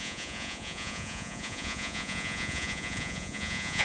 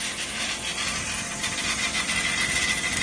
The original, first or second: second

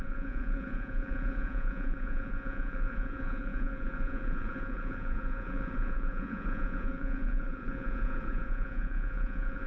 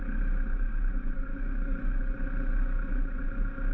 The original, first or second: second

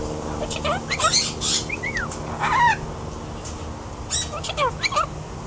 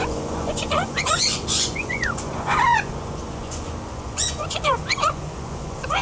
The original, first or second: first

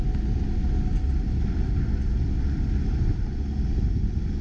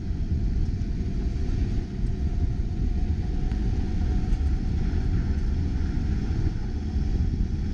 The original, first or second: first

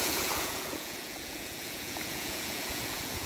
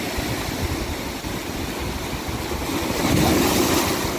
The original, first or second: second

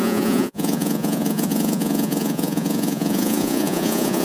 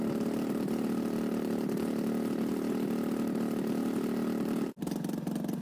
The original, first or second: second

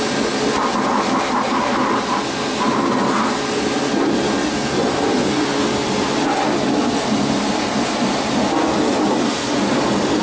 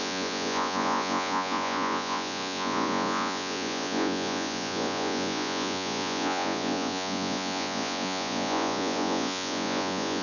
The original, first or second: first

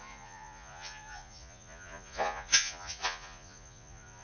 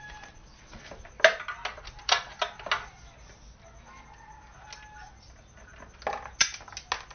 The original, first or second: second